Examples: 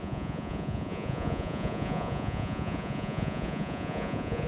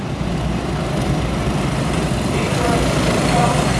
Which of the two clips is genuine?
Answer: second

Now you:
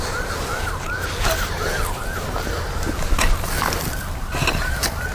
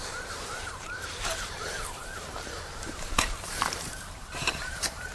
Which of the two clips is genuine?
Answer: first